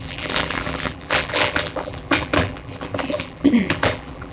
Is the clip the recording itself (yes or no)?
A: no